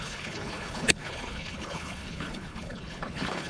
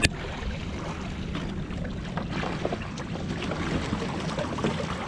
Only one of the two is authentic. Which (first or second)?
second